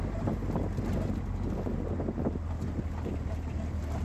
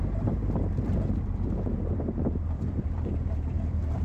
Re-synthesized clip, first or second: second